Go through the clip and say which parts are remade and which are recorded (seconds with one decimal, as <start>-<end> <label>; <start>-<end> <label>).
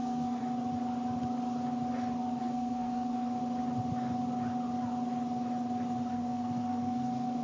0.0-0.4 remade; 0.4-2.4 recorded; 2.4-3.4 remade; 3.4-6.1 recorded; 6.1-7.4 remade